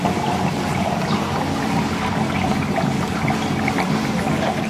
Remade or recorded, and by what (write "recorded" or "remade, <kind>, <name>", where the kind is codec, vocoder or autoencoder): recorded